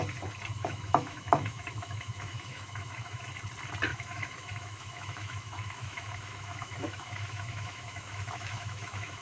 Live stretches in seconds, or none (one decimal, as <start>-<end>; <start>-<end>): 0.0-0.6; 3.2-3.9